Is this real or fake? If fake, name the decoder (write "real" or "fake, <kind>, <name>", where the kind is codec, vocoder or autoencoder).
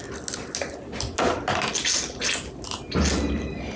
real